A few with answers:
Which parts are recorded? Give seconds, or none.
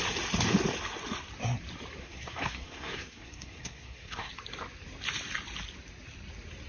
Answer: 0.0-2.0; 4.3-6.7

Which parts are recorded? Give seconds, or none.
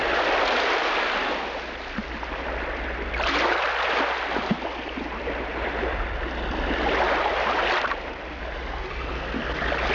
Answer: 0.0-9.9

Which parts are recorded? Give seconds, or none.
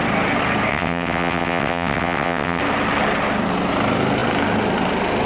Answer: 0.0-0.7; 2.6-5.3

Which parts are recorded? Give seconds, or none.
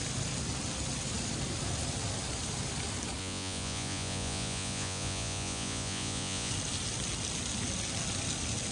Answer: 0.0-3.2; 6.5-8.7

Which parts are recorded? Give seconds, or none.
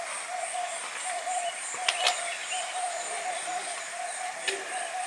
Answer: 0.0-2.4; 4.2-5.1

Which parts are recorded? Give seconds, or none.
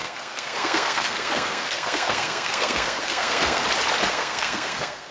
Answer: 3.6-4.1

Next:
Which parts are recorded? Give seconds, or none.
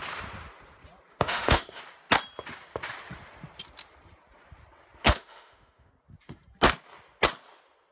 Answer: 0.0-1.1; 1.8-5.0; 5.9-7.9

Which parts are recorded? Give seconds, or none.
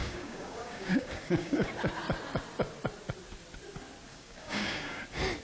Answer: 1.7-4.1; 5.0-5.4